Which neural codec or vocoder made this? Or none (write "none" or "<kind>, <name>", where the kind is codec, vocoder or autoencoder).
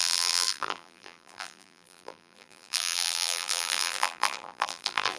vocoder, BigVGAN v2